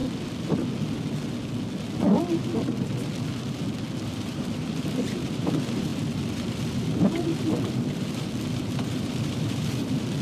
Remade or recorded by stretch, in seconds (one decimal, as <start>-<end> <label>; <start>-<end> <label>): 0.0-4.1 recorded; 4.1-10.2 remade